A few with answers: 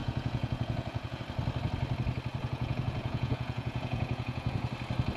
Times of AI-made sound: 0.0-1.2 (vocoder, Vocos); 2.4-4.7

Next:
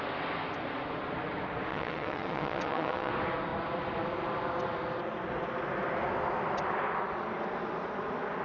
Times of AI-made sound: 1.7-3.1 (vocoder, WaveNeXt)